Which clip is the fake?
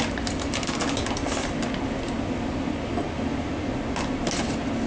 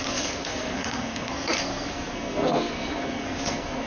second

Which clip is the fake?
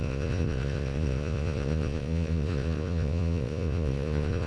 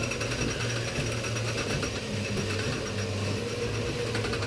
first